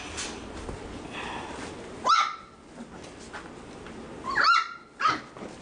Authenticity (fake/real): real